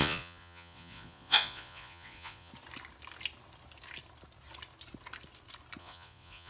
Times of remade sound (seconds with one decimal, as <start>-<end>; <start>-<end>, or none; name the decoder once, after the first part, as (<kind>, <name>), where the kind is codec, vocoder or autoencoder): 0.0-2.5 (vocoder, Vocos); 5.8-6.5